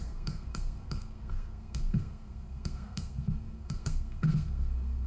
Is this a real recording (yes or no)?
no